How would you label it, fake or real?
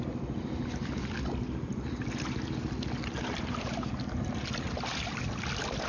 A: real